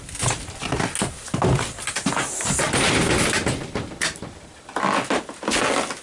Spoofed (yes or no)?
no